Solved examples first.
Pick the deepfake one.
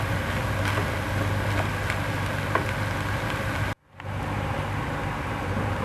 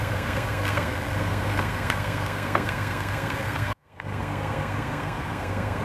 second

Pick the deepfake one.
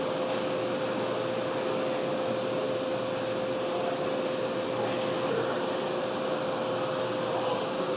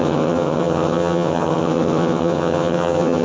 second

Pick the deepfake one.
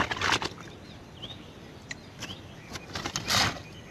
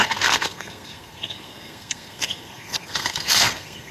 second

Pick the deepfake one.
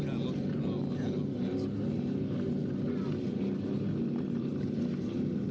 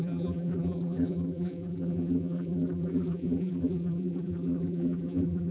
second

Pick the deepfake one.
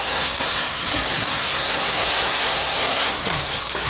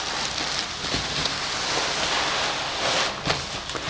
first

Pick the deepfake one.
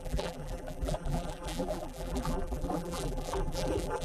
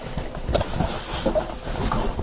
first